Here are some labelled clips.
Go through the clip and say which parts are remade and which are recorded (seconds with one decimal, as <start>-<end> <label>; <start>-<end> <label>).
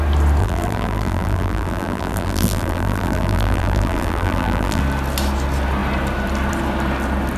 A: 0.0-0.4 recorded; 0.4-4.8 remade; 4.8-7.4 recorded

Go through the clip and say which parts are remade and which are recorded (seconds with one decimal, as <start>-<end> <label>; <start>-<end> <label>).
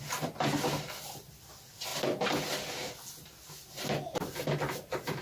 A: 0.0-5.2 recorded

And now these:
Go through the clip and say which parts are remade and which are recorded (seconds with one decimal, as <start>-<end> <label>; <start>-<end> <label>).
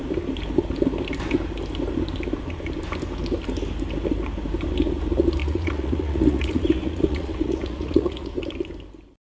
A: 0.0-5.4 recorded; 5.4-8.4 remade; 8.4-9.3 recorded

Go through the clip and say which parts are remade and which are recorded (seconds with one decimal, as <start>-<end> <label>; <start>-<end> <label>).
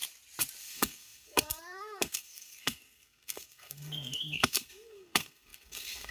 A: 0.0-0.6 recorded; 0.6-6.1 remade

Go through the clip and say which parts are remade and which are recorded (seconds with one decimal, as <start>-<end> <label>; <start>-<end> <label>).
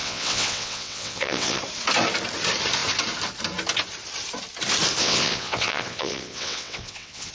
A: 0.0-1.6 remade; 1.6-5.0 recorded; 5.0-7.3 remade